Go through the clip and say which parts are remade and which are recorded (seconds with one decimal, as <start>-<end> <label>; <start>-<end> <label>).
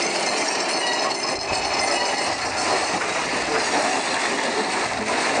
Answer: 0.0-5.4 recorded